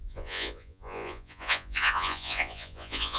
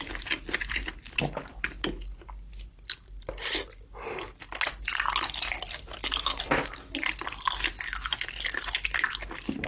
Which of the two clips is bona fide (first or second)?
second